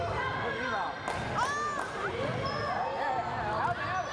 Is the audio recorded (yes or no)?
yes